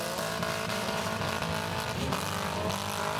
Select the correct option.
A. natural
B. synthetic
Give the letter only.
A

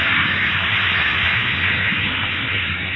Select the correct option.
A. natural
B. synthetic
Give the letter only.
B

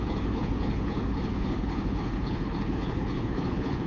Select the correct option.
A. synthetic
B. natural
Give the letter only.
A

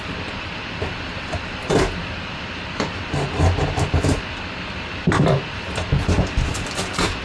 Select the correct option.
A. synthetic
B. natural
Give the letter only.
A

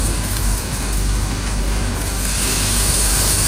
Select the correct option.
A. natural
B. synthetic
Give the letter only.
B